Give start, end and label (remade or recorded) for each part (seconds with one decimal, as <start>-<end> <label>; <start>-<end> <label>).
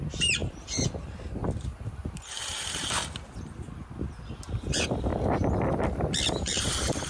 0.0-3.0 remade; 3.0-4.0 recorded; 4.0-5.1 remade; 5.1-6.3 recorded; 6.3-7.1 remade